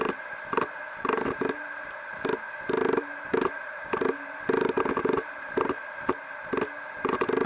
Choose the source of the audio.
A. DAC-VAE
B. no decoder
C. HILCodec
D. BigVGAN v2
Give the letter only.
D